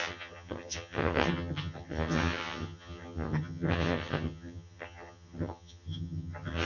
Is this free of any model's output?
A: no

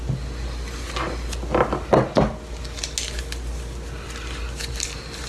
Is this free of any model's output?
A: yes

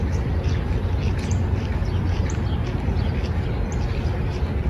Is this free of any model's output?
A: yes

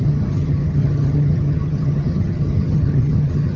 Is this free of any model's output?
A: no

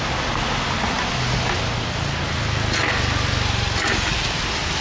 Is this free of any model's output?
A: yes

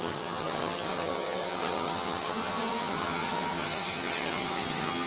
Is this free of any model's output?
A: no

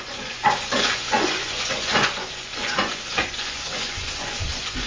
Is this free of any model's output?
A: no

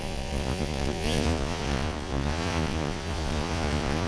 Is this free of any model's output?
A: no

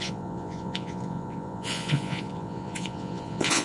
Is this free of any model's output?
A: no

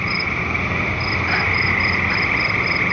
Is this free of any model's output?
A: yes